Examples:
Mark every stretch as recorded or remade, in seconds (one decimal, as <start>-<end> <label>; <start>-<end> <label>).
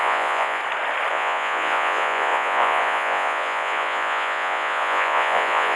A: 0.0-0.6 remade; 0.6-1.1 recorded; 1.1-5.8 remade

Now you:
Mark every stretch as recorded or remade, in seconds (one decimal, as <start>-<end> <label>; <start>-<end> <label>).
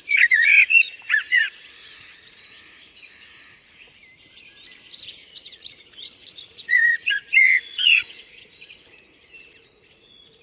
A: 0.0-4.0 remade; 4.0-5.0 recorded; 5.0-10.4 remade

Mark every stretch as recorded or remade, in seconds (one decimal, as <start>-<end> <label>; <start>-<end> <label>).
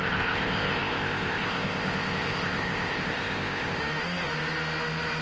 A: 0.0-3.8 remade; 3.8-5.2 recorded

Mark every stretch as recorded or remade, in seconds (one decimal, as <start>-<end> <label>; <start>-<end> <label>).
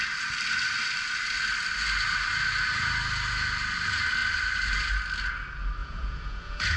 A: 0.0-5.8 recorded; 5.8-6.8 remade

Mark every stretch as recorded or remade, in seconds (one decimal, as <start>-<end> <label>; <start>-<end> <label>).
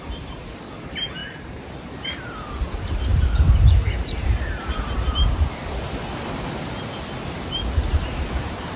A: 0.0-1.2 recorded; 1.2-1.9 remade; 1.9-3.1 recorded; 3.1-5.6 remade; 5.6-8.8 recorded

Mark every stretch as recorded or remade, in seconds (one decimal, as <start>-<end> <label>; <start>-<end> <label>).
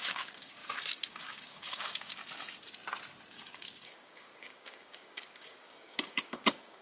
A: 0.0-0.6 remade; 0.6-1.1 recorded; 1.1-2.2 remade; 2.2-3.3 recorded; 3.3-6.8 remade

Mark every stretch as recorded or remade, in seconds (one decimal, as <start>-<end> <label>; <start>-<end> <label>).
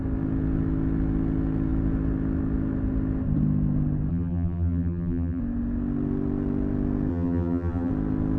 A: 0.0-4.1 recorded; 4.1-5.4 remade; 5.4-7.1 recorded; 7.1-7.9 remade; 7.9-8.4 recorded